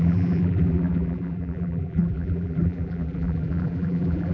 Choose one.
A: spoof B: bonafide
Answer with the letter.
A